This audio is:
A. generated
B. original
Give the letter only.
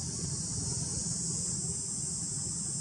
B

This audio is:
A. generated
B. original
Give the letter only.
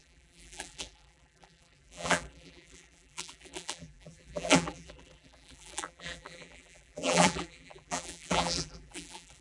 A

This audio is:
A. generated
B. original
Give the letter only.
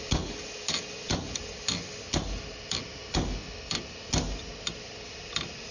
B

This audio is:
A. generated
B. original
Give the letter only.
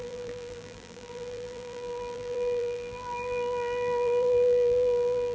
A